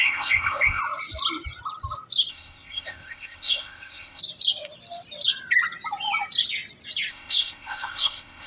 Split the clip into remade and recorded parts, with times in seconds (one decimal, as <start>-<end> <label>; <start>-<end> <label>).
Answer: 0.0-0.8 remade; 0.8-2.3 recorded; 2.3-4.2 remade; 4.2-7.1 recorded; 7.1-8.5 remade